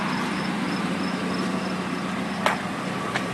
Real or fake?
real